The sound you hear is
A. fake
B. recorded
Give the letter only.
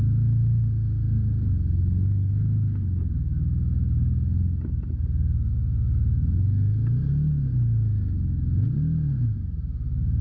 B